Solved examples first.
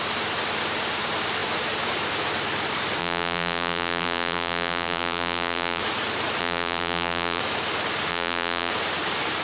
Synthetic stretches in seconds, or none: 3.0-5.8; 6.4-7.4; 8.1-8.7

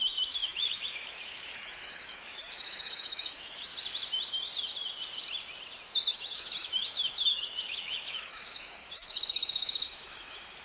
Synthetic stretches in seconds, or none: 0.0-3.7; 6.1-10.6

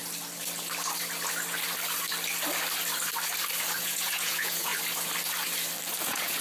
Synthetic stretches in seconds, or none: 3.8-4.7; 6.0-6.4

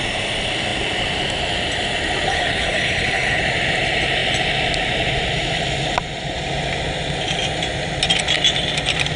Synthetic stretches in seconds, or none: 2.3-3.4

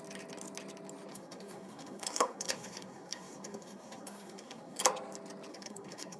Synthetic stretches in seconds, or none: 1.1-4.8; 5.5-6.2

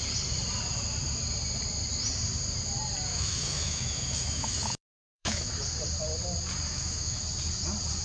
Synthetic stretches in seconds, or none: 3.1-5.5; 6.7-7.2